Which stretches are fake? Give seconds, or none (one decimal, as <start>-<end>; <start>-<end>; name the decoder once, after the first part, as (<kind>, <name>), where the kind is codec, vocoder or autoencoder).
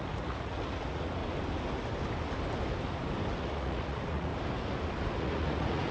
0.0-1.2 (vocoder, Vocos); 3.4-4.3; 5.2-5.9